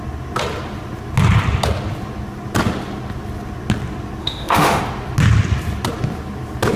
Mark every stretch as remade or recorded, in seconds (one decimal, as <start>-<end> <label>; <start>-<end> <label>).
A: 0.0-4.2 recorded; 4.2-4.8 remade; 4.8-6.8 recorded